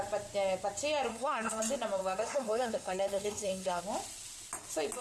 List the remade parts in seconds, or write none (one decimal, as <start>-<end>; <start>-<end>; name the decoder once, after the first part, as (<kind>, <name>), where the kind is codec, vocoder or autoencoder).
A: 1.1-1.6 (codec, SNAC); 2.0-3.8